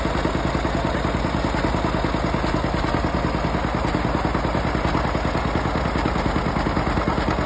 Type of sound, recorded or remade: recorded